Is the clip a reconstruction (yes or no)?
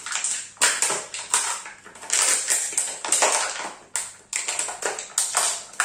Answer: no